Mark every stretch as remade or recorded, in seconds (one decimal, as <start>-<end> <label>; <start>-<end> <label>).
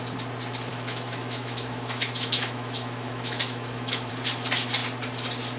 0.0-0.7 recorded; 0.7-4.1 remade; 4.1-5.6 recorded